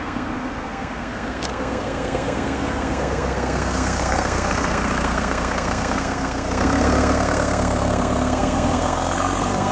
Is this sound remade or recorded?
remade